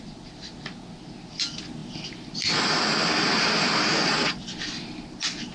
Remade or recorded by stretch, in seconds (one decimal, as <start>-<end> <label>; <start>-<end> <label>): 0.0-5.5 recorded